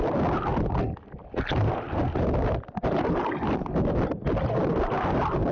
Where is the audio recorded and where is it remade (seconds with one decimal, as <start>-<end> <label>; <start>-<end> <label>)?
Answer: 0.0-5.5 recorded